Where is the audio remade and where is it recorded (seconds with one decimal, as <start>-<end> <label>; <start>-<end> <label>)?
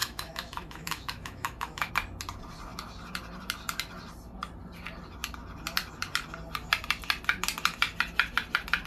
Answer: 0.0-1.9 remade; 1.9-8.9 recorded